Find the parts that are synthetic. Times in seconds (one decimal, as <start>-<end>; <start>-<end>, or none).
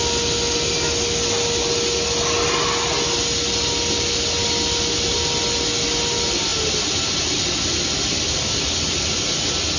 none